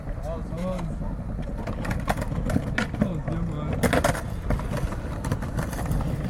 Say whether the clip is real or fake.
real